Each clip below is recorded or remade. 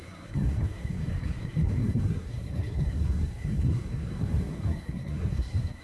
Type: remade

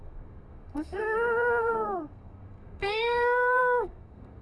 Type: remade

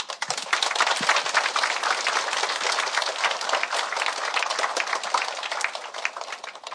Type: recorded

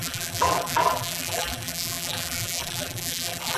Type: remade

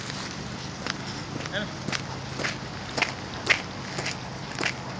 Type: recorded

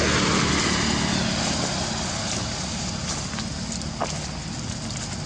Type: recorded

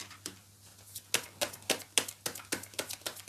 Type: recorded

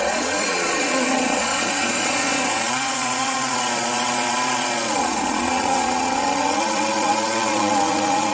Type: remade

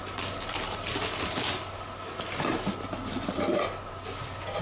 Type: recorded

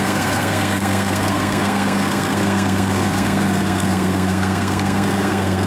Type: remade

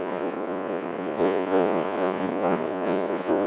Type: remade